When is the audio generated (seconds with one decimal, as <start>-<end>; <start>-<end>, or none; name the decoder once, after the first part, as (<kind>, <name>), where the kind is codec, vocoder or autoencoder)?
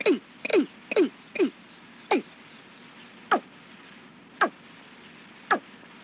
none